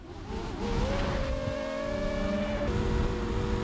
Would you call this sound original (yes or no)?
yes